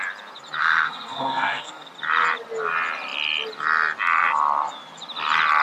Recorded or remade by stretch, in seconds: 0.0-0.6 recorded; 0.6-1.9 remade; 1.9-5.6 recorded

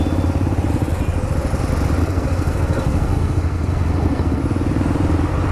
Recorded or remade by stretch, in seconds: 0.0-2.0 recorded; 2.0-4.4 remade; 4.4-5.5 recorded

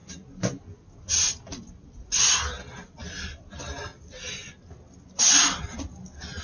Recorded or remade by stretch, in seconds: 0.0-6.4 recorded

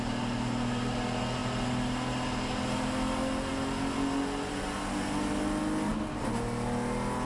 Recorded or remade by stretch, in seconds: 0.0-7.2 recorded